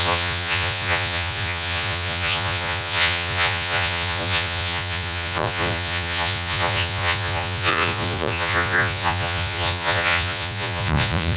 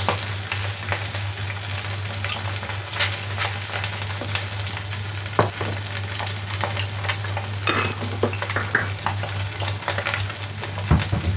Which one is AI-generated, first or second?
first